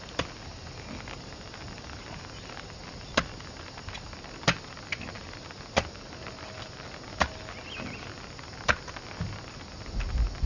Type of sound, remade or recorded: recorded